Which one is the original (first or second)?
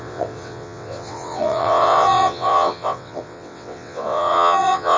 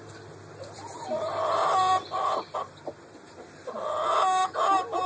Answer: second